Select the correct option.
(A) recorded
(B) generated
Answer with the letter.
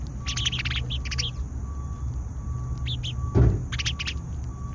A